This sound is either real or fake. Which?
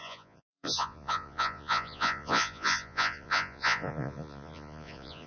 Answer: fake